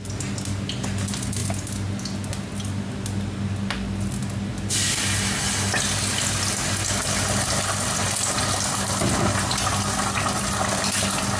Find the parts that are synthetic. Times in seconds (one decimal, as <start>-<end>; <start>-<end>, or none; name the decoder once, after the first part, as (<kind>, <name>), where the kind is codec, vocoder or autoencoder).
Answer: none

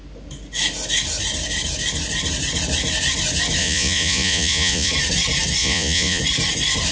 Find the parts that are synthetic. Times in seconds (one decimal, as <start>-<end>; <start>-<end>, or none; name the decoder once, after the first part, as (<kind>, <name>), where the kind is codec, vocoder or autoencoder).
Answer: 3.6-4.9 (vocoder, Vocos); 5.6-6.2

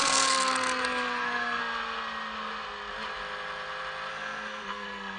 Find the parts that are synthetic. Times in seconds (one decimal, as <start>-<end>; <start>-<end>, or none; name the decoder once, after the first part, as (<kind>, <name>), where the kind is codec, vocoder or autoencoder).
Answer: 0.0-1.6 (codec, SNAC); 4.1-5.2

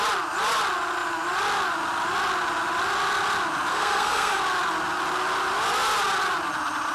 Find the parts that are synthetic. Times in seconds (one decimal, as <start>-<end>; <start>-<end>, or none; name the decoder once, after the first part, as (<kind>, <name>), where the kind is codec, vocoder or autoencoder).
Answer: 3.7-4.4 (codec, SNAC)

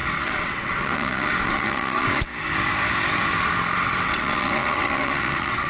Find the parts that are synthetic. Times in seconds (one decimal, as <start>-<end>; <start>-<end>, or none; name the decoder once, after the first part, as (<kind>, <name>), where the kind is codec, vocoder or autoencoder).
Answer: 0.0-2.3 (vocoder, WaveNeXt); 4.0-5.7